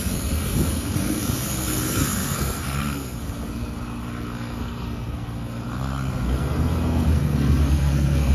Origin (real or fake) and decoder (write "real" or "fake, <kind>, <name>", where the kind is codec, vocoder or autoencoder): fake, codec, SNAC